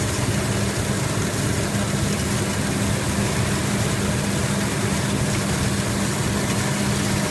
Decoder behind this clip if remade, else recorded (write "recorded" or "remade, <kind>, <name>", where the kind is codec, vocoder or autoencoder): recorded